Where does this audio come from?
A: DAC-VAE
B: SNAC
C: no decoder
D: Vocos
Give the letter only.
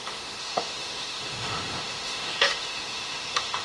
A